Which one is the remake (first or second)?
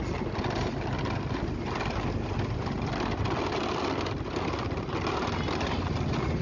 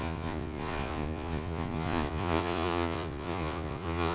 second